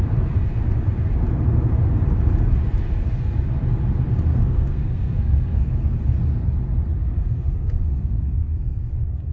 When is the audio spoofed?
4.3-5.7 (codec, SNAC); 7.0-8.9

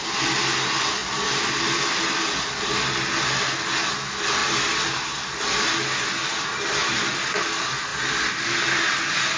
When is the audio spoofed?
none

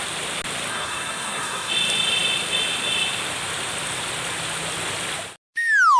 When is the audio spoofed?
0.7-1.7 (codec, SNAC)

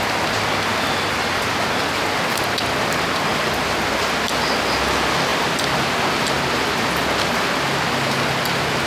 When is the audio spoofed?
none

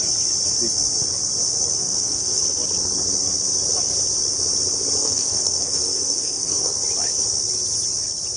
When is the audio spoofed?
1.8-2.4 (codec, SNAC); 5.0-6.7

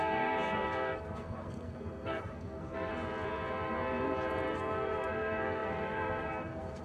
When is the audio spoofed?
0.0-2.9 (codec, SNAC); 4.5-6.8